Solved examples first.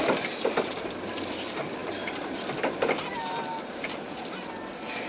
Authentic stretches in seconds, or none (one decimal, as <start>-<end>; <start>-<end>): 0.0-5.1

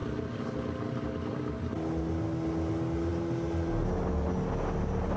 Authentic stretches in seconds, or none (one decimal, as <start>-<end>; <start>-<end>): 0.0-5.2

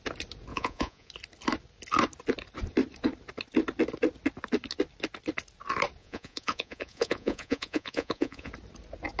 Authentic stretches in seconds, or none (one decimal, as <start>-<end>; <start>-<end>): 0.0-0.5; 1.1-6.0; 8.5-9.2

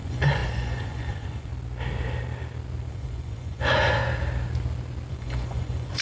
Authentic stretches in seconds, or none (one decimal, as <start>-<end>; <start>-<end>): 1.5-2.9; 4.0-5.1